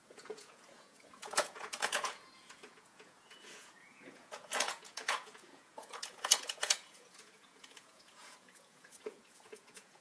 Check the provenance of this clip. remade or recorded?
remade